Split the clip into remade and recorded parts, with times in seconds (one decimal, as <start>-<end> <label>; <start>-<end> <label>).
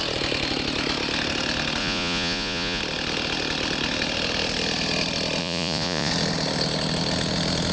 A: 0.0-1.8 recorded; 1.8-2.8 remade; 2.8-5.4 recorded; 5.4-6.1 remade; 6.1-7.7 recorded